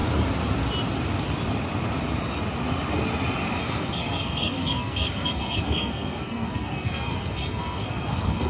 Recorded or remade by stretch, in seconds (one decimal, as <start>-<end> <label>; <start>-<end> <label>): 0.0-3.6 recorded; 3.6-8.5 remade